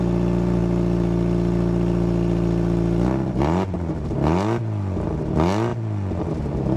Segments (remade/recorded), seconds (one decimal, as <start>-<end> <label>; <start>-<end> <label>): 0.0-6.8 recorded